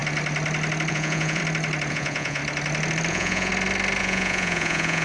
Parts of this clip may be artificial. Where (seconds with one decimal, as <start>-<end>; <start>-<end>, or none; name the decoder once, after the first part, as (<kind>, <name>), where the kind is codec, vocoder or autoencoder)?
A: 0.9-1.4 (vocoder, Vocos); 1.9-2.4; 3.1-3.5; 4.0-5.0